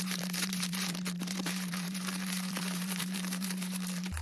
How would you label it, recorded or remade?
remade